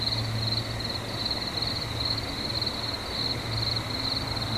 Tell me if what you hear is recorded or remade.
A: recorded